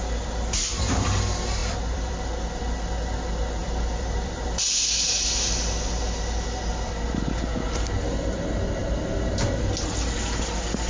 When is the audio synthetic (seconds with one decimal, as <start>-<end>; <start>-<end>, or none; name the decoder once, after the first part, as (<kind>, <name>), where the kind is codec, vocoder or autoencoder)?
1.6-2.6 (vocoder, BigVGAN v2); 3.6-4.6